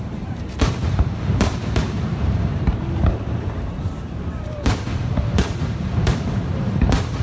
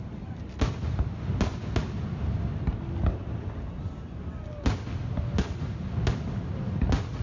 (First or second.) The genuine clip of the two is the second